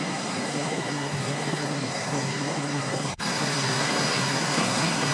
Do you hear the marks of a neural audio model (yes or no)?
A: yes